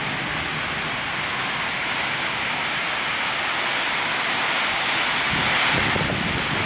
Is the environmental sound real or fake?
real